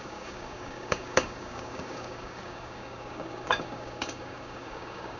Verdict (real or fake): fake